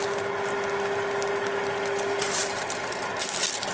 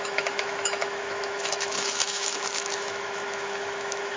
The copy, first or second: second